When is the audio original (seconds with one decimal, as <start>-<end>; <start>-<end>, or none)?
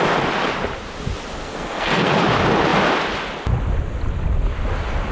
0.0-1.4; 2.1-5.1